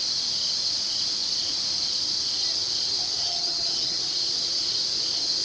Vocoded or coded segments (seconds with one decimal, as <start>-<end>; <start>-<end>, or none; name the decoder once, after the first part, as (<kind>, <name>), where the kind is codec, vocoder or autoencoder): 3.2-4.0 (vocoder, HiFi-GAN)